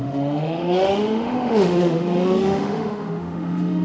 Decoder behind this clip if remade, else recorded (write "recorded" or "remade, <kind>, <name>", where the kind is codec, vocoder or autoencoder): remade, autoencoder, DAC-VAE